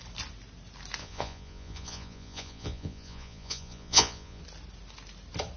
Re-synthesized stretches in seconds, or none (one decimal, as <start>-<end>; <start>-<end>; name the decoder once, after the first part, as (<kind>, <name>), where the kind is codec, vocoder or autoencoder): 1.0-4.4 (vocoder, Vocos)